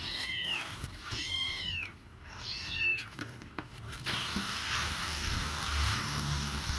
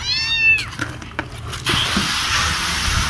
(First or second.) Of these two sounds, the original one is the second